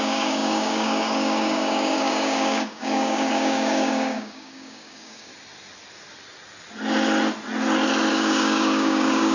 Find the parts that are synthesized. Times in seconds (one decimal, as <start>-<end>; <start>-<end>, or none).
0.0-5.3; 8.1-9.3